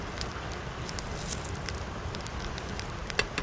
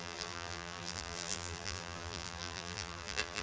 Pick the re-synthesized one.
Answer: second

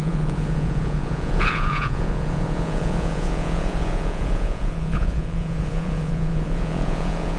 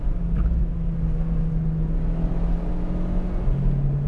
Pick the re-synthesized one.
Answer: first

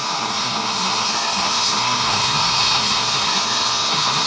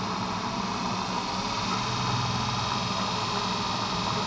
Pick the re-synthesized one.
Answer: first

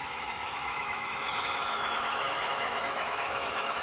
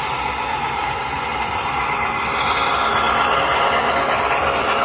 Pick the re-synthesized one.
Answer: first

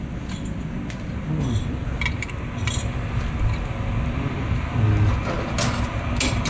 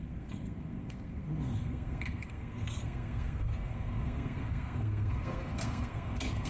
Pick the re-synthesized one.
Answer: second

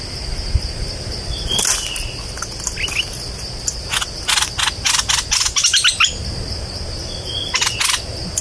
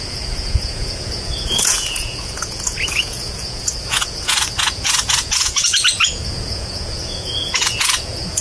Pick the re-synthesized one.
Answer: second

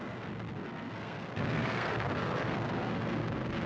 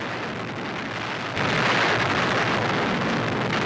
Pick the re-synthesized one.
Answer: first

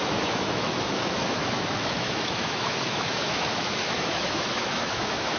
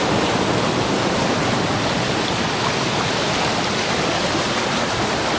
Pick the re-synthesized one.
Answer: first